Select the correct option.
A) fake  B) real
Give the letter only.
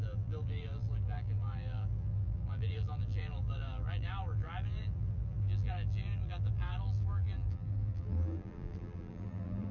A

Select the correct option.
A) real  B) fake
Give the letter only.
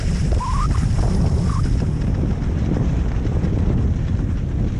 A